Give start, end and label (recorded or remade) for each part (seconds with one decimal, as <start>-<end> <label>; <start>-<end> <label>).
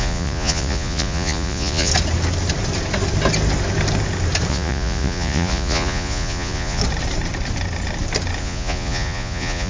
0.0-1.9 remade; 1.9-4.5 recorded; 4.5-6.8 remade; 6.8-8.4 recorded; 8.4-9.7 remade